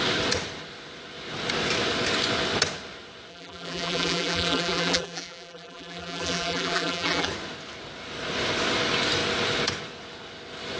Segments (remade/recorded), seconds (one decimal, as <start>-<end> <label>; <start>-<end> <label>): 0.0-3.3 recorded; 3.3-7.3 remade; 7.3-10.8 recorded

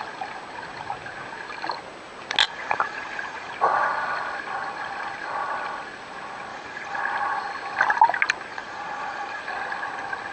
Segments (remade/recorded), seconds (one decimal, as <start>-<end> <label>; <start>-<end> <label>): 0.0-2.4 recorded; 2.4-3.5 remade; 3.5-6.5 recorded; 6.5-7.0 remade; 7.0-8.5 recorded; 8.5-9.4 remade; 9.4-10.3 recorded

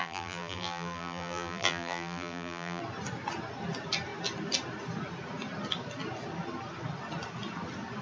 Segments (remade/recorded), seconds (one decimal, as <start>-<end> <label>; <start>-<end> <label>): 0.0-2.8 remade; 2.8-8.0 recorded

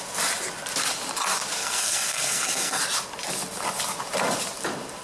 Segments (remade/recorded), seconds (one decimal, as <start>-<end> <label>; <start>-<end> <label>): 0.0-1.6 recorded; 1.6-2.8 remade; 2.8-5.0 recorded

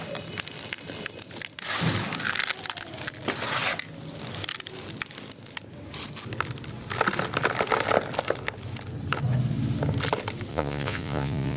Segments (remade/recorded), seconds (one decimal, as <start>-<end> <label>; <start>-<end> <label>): 0.0-10.5 recorded; 10.5-11.6 remade

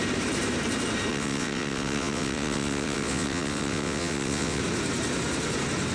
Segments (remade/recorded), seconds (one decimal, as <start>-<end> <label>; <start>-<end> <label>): 0.0-1.1 recorded; 1.1-4.6 remade; 4.6-5.9 recorded

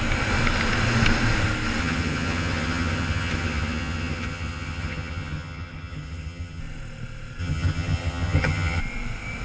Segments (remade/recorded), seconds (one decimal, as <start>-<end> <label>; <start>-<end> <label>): 0.0-1.8 recorded; 1.8-6.6 remade; 6.6-7.4 recorded; 7.4-8.8 remade; 8.8-9.4 recorded

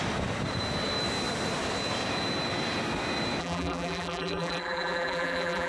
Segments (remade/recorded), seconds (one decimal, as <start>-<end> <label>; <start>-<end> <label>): 0.0-3.4 recorded; 3.4-5.7 remade